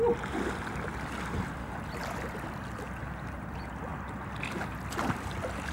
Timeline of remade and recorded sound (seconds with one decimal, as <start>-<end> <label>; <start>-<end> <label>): 0.0-5.7 recorded